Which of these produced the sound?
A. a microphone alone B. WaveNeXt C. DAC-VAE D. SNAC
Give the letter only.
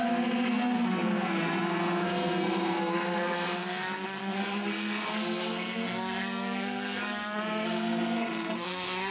D